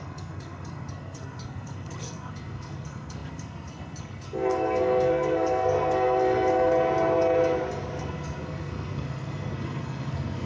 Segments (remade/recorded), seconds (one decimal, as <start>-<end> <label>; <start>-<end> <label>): 0.0-6.7 remade; 6.7-8.0 recorded; 8.0-10.5 remade